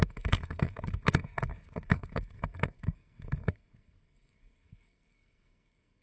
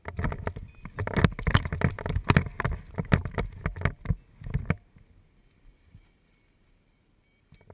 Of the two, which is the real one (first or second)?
second